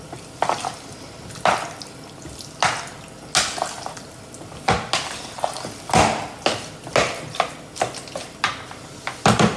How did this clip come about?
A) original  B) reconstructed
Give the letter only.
A